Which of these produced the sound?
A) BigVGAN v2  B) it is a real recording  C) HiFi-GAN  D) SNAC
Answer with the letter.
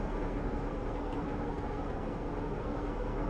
D